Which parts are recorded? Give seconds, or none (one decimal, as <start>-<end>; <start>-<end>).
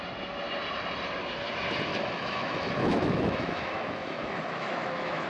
0.0-1.9